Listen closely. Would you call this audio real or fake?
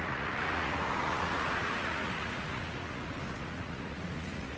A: fake